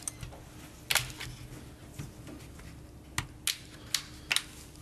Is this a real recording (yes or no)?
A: yes